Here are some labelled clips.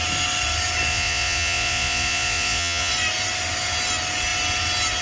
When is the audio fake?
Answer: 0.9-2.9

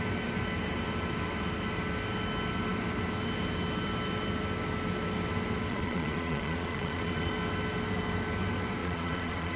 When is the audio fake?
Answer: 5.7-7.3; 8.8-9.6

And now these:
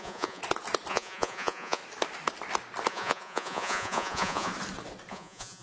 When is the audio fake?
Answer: 0.0-0.4; 0.9-1.8; 2.9-4.5; 5.1-5.6